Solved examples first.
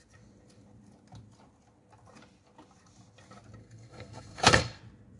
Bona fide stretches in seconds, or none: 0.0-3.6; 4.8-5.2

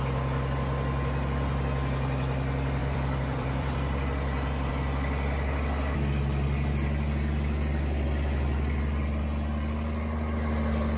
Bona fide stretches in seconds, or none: 0.0-2.8; 4.7-11.0

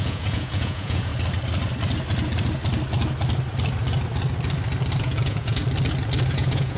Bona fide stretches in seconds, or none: 1.1-5.0; 5.6-6.3

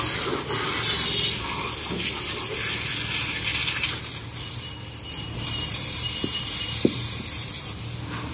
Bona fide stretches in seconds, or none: 0.0-3.5; 7.8-8.3

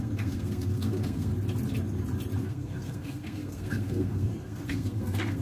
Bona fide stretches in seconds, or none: 1.3-2.4

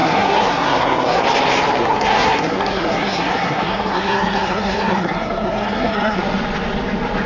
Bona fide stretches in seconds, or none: 1.2-1.8; 6.2-7.3

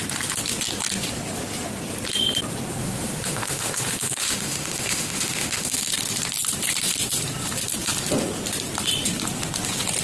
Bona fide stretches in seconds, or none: 0.0-2.8; 5.9-10.0

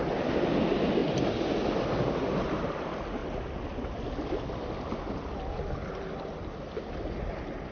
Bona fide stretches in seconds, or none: 0.0-7.7